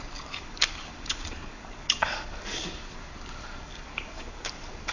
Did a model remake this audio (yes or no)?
yes